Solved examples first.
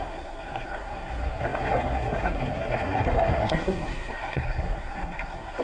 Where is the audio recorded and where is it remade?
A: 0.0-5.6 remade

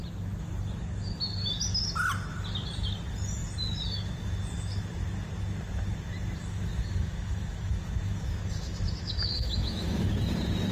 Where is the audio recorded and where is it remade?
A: 0.0-6.4 recorded; 6.4-10.1 remade; 10.1-10.7 recorded

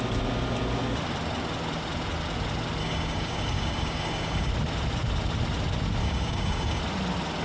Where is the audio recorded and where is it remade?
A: 0.0-2.8 recorded; 2.8-4.5 remade; 4.5-6.0 recorded; 6.0-6.8 remade; 6.8-7.4 recorded

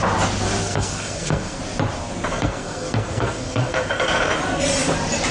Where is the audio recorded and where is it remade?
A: 0.0-0.6 recorded; 0.6-1.6 remade; 1.6-2.3 recorded; 2.3-4.3 remade; 4.3-5.3 recorded

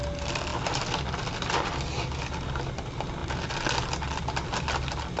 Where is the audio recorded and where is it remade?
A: 0.0-5.2 recorded